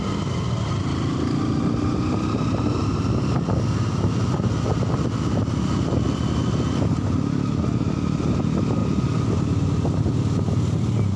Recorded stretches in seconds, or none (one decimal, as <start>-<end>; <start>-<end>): 0.0-8.8; 9.3-11.2